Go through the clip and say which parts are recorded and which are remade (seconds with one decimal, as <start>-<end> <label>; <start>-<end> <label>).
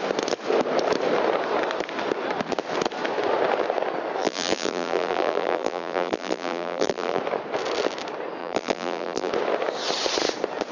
0.0-4.2 recorded; 4.2-7.2 remade; 7.2-8.4 recorded; 8.4-9.3 remade; 9.3-10.7 recorded